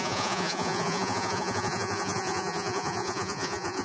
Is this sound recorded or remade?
remade